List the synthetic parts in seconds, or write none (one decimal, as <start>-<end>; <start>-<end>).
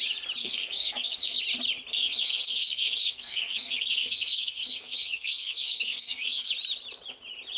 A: 0.4-1.4; 1.9-6.5